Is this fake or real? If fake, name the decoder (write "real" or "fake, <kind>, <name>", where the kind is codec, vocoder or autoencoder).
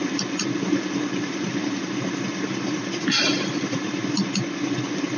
real